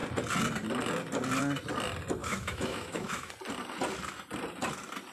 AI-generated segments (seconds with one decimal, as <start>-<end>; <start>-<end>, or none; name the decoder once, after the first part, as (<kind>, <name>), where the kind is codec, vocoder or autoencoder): 2.2-3.3 (autoencoder, DAC-VAE)